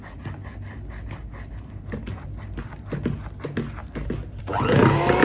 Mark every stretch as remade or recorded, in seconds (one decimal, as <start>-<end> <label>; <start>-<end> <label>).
0.0-5.2 recorded

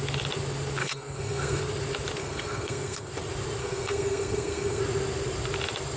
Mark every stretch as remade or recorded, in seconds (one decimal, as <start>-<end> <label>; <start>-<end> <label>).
0.0-0.8 recorded; 0.8-1.6 remade; 1.6-2.2 recorded; 2.2-3.1 remade; 3.1-3.6 recorded; 3.6-4.8 remade; 4.8-6.0 recorded

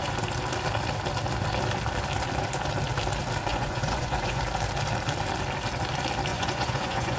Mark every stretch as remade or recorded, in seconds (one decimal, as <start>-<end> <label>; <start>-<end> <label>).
0.0-3.5 recorded; 3.5-4.4 remade; 4.4-6.3 recorded; 6.3-7.2 remade

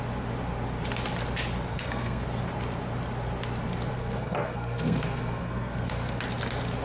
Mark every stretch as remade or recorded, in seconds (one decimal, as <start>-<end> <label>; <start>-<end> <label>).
0.0-1.7 recorded; 1.7-2.2 remade; 2.2-3.9 recorded; 3.9-6.2 remade; 6.2-6.8 recorded

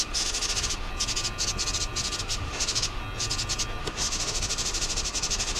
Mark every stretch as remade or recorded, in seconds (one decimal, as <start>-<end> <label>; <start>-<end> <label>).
0.0-0.9 remade; 0.9-2.2 recorded; 2.2-3.0 remade; 3.0-3.8 recorded; 3.8-5.6 remade

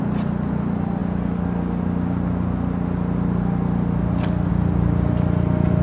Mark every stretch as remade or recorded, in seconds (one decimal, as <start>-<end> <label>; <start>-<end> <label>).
0.0-5.8 recorded

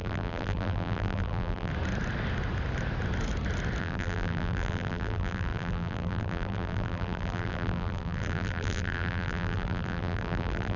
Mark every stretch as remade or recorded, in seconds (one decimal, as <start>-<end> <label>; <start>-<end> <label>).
0.0-1.7 remade; 1.7-3.8 recorded; 3.8-10.8 remade

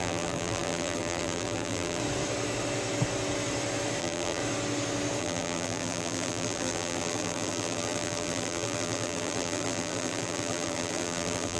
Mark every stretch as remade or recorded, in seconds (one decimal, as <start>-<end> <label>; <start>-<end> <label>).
0.0-2.0 remade; 2.0-4.0 recorded; 4.0-4.4 remade; 4.4-5.2 recorded; 5.2-11.6 remade